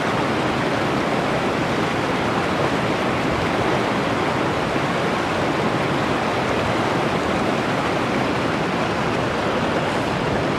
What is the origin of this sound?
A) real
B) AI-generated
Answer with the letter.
A